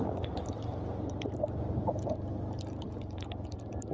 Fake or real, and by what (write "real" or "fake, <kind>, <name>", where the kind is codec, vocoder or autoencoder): real